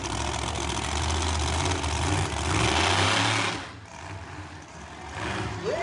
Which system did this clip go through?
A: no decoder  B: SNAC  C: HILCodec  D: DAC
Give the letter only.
A